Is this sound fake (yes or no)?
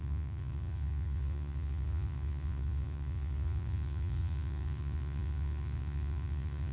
yes